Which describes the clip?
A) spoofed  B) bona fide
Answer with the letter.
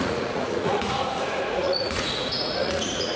A